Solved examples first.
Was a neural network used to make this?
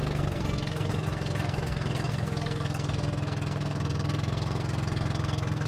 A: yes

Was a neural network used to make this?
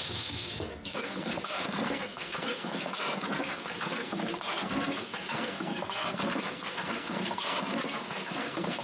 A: yes